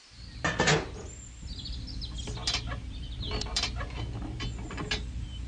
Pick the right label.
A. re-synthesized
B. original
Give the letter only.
B